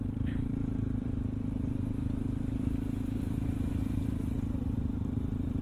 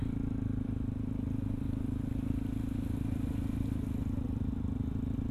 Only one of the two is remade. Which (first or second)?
first